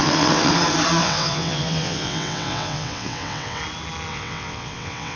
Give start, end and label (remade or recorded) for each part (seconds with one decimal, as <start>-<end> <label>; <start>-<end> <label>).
0.0-0.5 remade; 0.5-1.0 recorded; 1.0-3.6 remade; 3.6-4.1 recorded; 4.1-5.2 remade